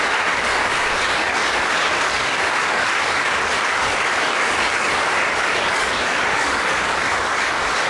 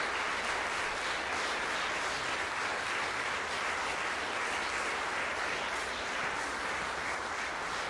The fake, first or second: first